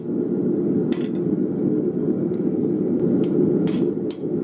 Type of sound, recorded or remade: recorded